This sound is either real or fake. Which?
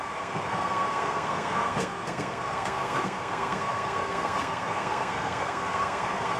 fake